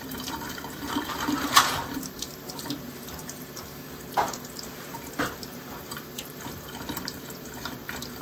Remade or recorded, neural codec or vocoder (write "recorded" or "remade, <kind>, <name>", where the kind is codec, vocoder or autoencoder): remade, vocoder, BigVGAN v2